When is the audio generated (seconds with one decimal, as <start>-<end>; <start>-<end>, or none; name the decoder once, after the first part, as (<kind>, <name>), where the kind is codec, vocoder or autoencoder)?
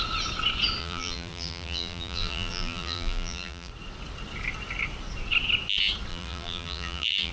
0.8-3.7 (vocoder, BigVGAN v2); 6.1-7.3